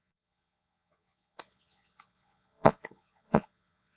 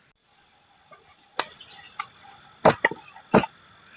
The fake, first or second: first